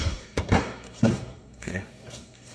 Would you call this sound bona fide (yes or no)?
no